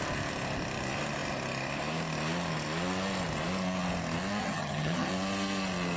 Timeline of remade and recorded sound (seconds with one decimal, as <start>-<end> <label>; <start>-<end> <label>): 0.0-4.4 recorded; 4.4-5.1 remade; 5.1-6.0 recorded